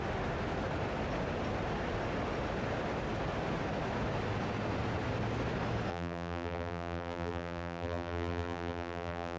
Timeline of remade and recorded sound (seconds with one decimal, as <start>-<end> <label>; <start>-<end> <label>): 0.0-5.9 recorded; 5.9-9.4 remade